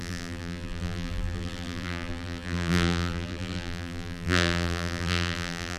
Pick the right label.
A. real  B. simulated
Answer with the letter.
B